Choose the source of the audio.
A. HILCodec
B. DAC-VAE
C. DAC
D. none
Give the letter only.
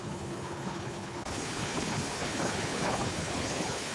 A